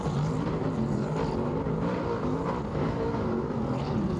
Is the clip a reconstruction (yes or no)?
no